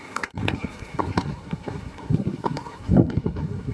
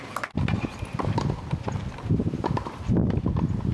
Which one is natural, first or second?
second